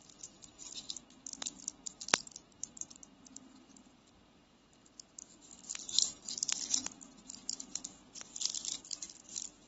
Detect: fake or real real